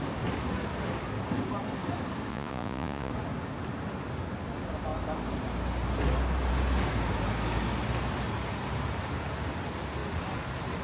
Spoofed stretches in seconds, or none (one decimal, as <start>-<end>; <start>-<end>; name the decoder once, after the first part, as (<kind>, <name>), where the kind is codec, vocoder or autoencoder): 2.3-3.1 (vocoder, Vocos)